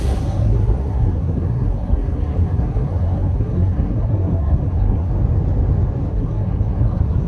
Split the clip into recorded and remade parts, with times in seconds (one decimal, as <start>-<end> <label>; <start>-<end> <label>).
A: 0.0-5.1 remade; 5.1-6.1 recorded; 6.1-7.3 remade